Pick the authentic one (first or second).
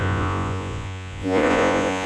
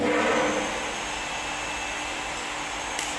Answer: second